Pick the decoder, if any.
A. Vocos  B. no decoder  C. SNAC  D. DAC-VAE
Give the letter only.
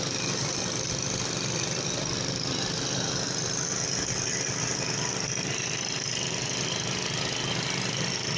B